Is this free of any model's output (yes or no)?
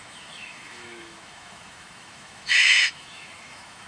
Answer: no